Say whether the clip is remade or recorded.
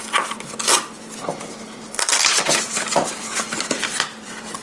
recorded